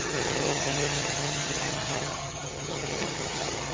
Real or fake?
fake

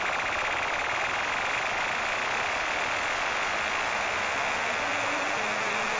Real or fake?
real